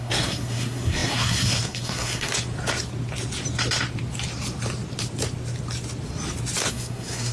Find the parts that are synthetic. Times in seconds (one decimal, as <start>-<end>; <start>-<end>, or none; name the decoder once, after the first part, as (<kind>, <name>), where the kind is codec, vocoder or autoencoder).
0.0-2.3 (codec, SNAC); 6.7-7.3